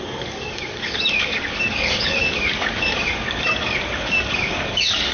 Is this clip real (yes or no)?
no